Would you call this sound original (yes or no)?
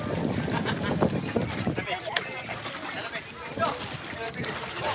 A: yes